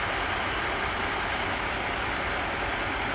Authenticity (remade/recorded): recorded